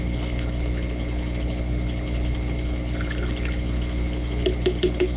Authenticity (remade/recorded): remade